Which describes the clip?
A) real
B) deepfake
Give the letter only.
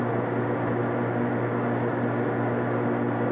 A